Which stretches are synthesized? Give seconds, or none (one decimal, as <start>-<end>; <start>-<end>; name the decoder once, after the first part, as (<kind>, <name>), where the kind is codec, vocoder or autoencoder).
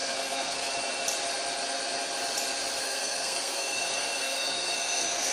0.0-0.7 (codec, SNAC); 2.8-5.3